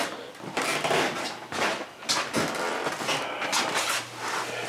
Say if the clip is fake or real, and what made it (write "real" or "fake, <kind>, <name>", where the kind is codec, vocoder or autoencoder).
real